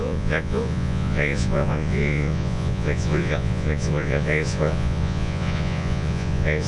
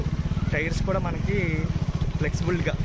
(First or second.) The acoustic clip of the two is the second